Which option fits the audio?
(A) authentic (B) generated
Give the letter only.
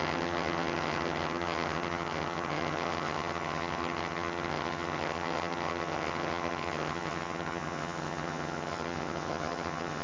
B